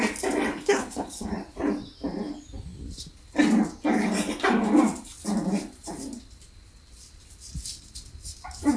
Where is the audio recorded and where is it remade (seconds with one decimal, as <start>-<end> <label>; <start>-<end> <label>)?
0.0-0.5 recorded; 0.5-1.3 remade; 1.3-8.8 recorded